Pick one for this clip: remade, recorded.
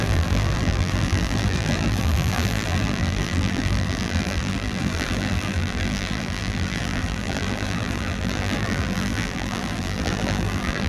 remade